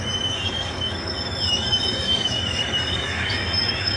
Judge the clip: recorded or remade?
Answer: remade